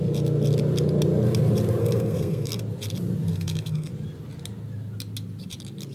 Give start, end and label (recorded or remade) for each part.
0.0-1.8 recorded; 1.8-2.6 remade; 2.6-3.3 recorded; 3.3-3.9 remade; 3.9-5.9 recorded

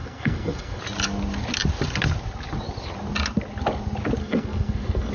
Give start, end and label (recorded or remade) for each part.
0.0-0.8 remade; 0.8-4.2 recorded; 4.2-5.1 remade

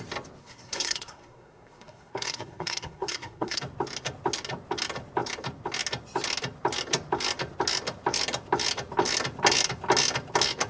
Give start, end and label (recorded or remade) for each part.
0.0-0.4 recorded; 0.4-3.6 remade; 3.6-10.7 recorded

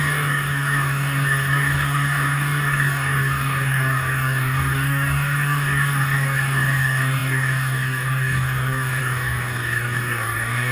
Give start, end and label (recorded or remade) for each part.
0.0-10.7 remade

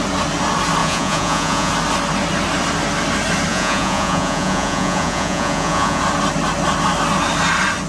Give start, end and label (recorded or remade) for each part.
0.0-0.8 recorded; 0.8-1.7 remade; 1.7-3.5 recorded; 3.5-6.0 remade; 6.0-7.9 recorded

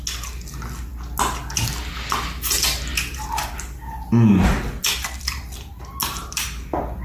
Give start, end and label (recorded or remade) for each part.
0.0-2.9 recorded; 2.9-3.5 remade; 3.5-6.0 recorded; 6.0-6.6 remade; 6.6-7.0 recorded